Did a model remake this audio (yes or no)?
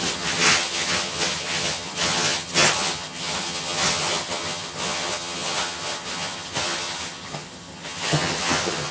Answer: yes